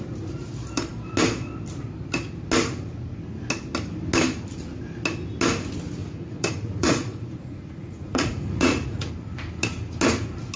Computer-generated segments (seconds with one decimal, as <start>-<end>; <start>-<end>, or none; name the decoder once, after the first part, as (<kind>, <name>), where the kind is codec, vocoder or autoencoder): 6.0-9.1 (vocoder, Vocos)